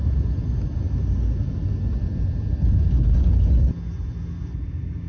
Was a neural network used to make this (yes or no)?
no